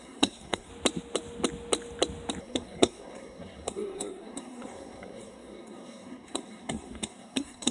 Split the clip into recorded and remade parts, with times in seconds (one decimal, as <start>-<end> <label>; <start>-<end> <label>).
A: 0.0-0.7 remade; 0.7-2.4 recorded; 2.4-7.7 remade